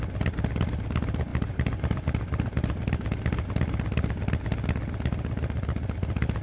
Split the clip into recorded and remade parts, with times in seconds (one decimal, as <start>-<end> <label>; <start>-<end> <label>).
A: 0.0-6.4 recorded